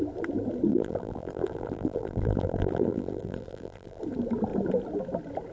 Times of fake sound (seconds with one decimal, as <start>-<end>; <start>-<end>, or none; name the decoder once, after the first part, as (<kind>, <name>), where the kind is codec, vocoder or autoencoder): 0.7-4.0 (vocoder, BigVGAN v2)